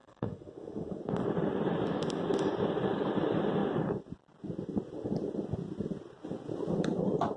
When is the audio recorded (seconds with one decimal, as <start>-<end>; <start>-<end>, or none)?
1.0-7.4